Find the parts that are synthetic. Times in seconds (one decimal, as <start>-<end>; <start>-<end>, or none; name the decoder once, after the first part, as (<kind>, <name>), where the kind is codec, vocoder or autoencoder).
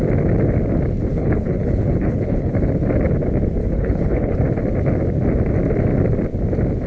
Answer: 1.1-2.7 (codec, HILCodec); 3.6-4.4